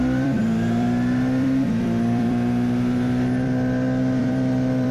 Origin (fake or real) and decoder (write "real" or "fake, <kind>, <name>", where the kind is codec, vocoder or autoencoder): fake, vocoder, BigVGAN v2